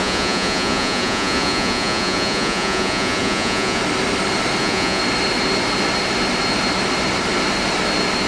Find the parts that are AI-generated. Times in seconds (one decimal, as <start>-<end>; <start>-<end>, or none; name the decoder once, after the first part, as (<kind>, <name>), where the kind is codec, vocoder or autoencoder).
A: 0.0-3.8 (vocoder, Vocos); 4.6-5.0